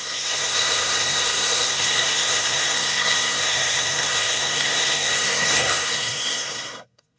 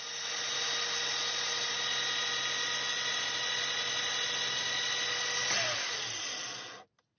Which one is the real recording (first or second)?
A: second